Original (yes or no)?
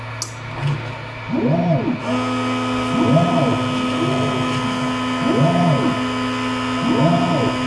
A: yes